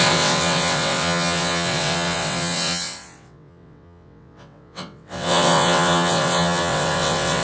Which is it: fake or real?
fake